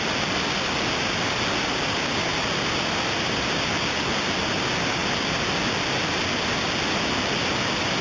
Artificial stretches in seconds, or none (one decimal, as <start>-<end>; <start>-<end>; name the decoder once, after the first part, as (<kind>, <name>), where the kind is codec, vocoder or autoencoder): none